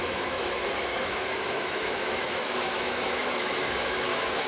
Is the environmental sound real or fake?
fake